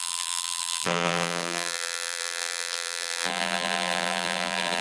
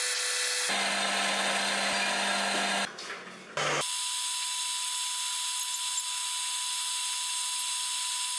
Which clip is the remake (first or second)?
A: first